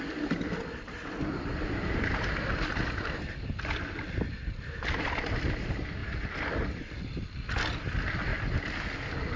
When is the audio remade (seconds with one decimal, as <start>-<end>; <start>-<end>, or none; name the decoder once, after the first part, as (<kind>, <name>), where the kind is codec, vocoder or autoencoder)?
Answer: none